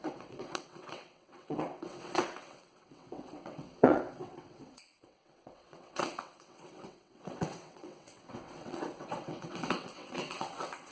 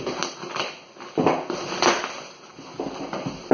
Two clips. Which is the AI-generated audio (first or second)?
first